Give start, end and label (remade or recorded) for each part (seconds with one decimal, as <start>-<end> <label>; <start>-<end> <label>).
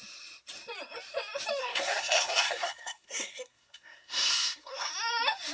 0.0-1.6 recorded; 1.6-4.9 remade; 4.9-5.5 recorded